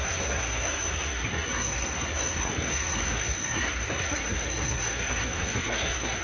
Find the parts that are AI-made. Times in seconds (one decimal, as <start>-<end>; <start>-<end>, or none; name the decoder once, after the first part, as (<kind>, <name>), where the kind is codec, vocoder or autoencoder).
0.0-6.2 (codec, SNAC)